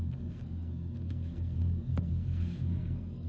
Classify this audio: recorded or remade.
remade